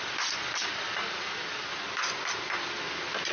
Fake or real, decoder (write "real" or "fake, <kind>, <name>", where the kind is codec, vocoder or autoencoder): real